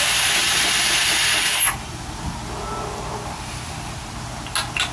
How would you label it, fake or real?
real